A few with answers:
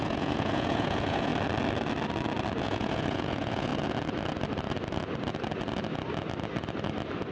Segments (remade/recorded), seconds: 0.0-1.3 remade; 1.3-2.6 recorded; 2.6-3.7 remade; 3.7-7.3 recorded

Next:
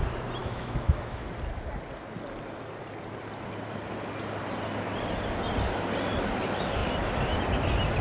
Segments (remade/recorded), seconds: 0.0-0.4 recorded; 0.4-1.3 remade; 1.3-8.0 recorded

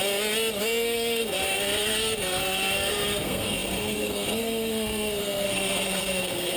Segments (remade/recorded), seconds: 0.0-0.6 recorded; 0.6-6.6 remade

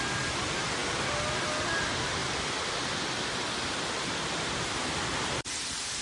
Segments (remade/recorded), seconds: 0.0-2.2 recorded; 2.2-6.0 remade

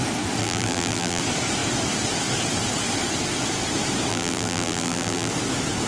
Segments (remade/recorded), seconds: 0.0-0.4 recorded; 0.4-1.2 remade; 1.2-4.1 recorded; 4.1-5.3 remade; 5.3-5.9 recorded

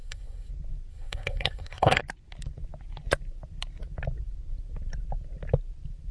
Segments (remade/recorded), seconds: 0.0-0.5 remade; 0.5-0.9 recorded; 0.9-2.0 remade; 2.0-6.1 recorded